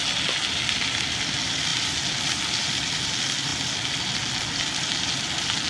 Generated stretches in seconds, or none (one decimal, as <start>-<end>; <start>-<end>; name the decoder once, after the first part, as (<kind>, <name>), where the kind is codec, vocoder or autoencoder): none

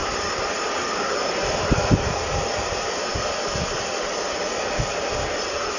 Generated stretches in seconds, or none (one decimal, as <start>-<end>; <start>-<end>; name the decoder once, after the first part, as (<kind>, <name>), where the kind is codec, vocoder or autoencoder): 0.0-2.9 (vocoder, BigVGAN v2)